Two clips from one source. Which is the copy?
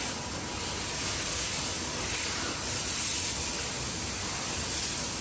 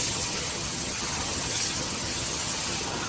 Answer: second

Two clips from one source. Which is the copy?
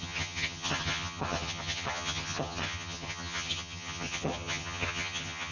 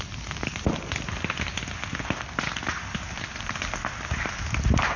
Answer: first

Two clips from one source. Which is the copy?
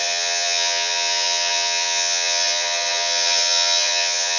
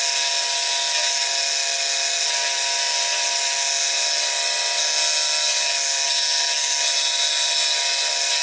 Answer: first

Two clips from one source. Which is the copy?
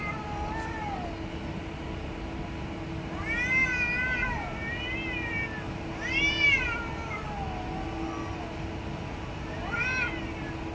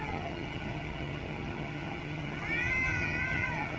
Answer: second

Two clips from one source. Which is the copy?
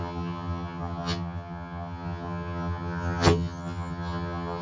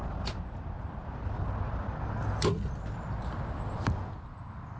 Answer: first